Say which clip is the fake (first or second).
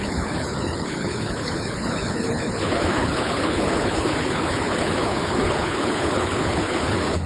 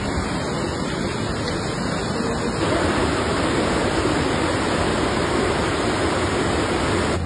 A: first